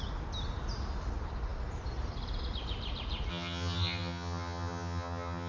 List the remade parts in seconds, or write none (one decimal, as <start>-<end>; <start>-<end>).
3.3-5.5